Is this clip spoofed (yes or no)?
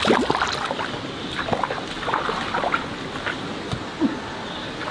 no